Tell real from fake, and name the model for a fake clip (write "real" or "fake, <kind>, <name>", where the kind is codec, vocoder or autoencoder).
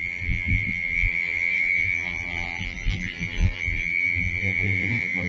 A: fake, vocoder, BigVGAN v2